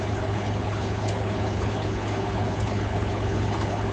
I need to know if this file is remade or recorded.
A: remade